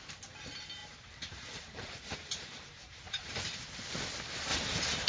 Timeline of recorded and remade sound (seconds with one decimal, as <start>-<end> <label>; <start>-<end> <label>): 0.0-0.8 recorded; 0.8-3.3 remade; 3.3-4.5 recorded; 4.5-5.1 remade